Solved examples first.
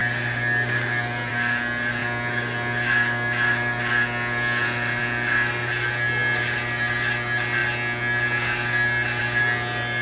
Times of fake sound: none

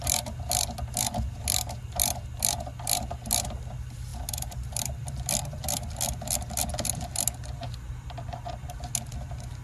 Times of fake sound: 4.1-5.0 (vocoder, BigVGAN v2)

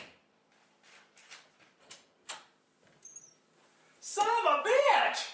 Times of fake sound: 0.0-3.1 (vocoder, BigVGAN v2); 4.2-5.3

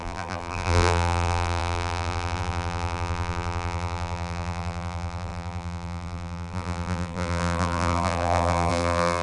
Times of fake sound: 0.0-9.2 (vocoder, BigVGAN v2)

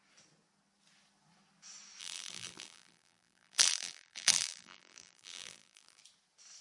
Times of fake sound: 2.0-6.0 (vocoder, BigVGAN v2)

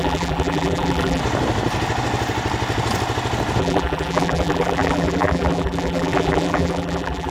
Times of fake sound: 0.0-1.2 (vocoder, BigVGAN v2); 3.6-7.3